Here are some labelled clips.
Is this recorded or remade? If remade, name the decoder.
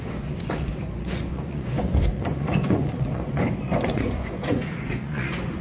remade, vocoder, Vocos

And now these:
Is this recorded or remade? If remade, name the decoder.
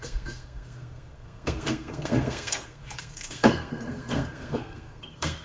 remade, codec, SNAC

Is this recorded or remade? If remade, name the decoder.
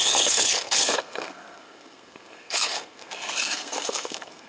remade, codec, SNAC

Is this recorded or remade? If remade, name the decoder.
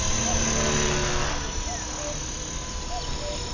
recorded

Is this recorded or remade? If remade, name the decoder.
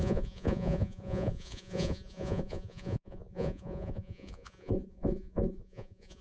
remade, vocoder, Vocos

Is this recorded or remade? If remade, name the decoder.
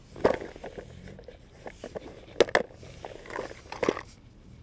recorded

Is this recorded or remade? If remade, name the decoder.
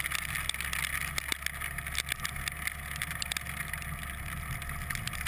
recorded